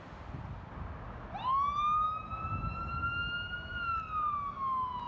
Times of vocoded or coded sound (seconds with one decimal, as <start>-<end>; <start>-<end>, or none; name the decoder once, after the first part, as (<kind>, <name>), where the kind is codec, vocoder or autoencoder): none